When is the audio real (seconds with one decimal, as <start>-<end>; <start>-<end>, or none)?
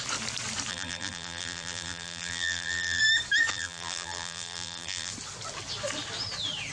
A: 0.0-0.7; 3.0-3.5; 5.1-6.7